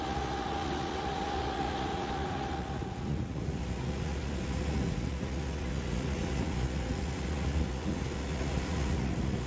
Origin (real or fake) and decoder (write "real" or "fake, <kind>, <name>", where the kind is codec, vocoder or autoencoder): fake, vocoder, Vocos